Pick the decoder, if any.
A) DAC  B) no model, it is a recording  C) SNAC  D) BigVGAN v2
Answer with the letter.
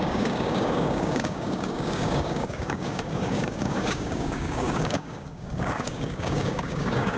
A